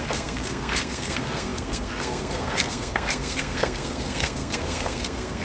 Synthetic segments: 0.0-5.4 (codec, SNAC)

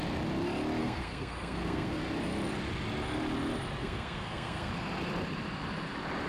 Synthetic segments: 0.8-2.0 (codec, SNAC); 3.8-4.7

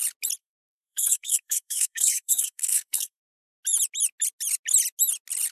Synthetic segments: 0.4-3.2 (codec, SNAC)

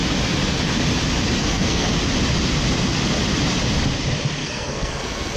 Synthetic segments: 1.4-2.0 (codec, SNAC); 4.4-5.4

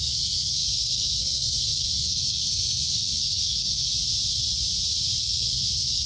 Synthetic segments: 0.0-3.9 (codec, SNAC); 5.2-6.1